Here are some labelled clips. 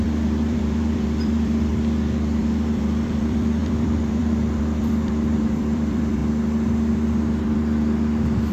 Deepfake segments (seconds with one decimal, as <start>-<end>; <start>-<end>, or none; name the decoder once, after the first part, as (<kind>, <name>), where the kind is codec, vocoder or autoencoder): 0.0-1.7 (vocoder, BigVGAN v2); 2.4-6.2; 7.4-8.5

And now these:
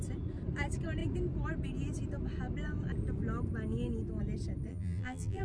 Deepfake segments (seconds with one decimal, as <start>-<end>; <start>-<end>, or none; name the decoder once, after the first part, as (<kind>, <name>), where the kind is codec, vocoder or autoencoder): 4.7-5.4 (vocoder, BigVGAN v2)

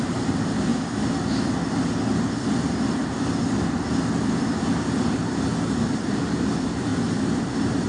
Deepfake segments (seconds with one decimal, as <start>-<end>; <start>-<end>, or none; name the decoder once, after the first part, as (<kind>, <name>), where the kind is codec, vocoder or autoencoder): 0.0-0.7 (vocoder, BigVGAN v2); 4.6-6.9; 7.4-7.9

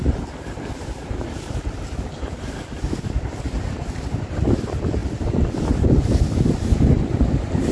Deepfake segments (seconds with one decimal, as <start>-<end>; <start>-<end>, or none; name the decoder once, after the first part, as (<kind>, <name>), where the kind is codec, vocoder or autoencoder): none